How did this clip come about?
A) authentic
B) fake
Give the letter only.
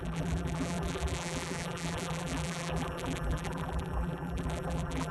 B